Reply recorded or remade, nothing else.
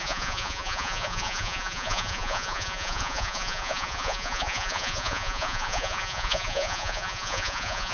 remade